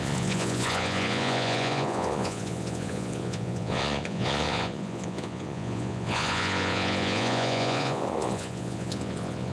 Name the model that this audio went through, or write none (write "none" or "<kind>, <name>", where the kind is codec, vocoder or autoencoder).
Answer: vocoder, Vocos